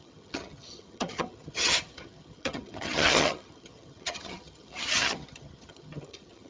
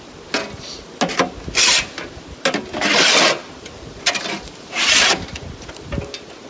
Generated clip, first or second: first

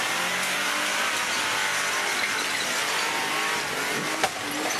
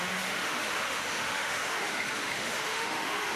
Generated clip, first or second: second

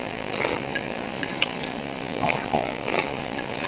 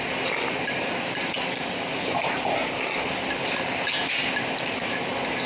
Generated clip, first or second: first